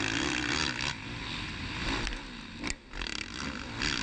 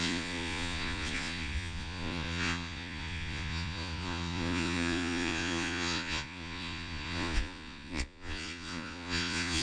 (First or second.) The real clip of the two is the first